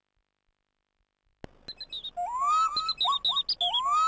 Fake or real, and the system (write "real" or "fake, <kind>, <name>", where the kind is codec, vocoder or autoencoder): real